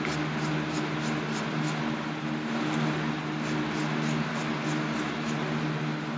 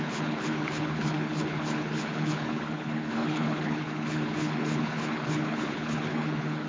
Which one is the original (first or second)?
first